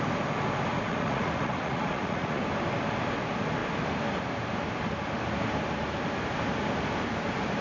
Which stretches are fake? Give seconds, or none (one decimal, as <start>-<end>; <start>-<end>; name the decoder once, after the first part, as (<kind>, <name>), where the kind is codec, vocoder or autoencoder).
0.7-2.4 (vocoder, Vocos)